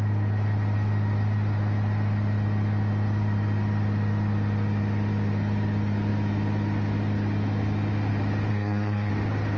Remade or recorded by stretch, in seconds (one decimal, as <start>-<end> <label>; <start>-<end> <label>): 0.0-8.5 recorded; 8.5-9.1 remade; 9.1-9.6 recorded